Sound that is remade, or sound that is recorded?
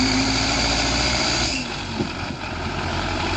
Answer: remade